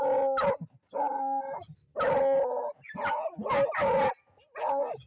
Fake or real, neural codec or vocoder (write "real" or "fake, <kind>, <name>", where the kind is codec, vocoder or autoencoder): real